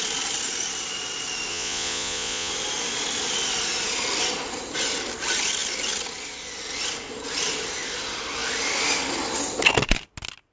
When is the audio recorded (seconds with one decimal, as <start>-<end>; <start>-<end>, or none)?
0.0-1.5; 2.5-10.5